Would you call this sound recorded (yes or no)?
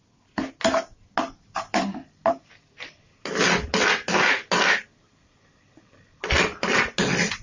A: yes